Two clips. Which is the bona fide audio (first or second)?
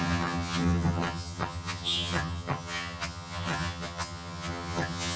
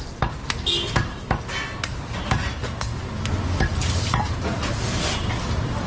second